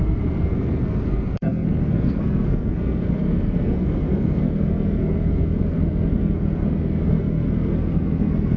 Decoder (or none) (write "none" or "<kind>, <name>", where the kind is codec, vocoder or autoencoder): codec, SNAC